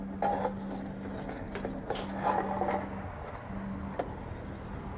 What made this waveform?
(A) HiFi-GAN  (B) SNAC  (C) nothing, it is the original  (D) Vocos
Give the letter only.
C